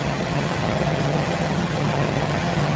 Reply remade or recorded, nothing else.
remade